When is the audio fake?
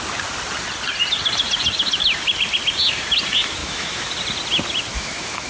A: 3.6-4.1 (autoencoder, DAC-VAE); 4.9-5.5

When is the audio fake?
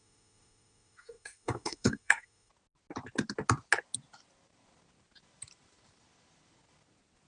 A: 0.0-2.5 (autoencoder, DAC-VAE)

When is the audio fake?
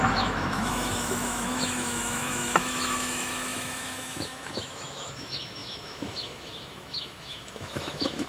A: 0.0-8.3 (autoencoder, DAC-VAE)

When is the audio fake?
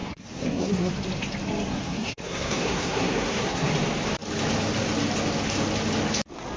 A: 0.0-0.9 (codec, SNAC); 1.7-3.7